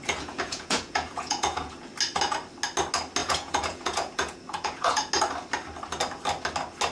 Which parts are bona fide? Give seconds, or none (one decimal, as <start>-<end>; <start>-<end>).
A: 1.9-3.2; 5.1-6.9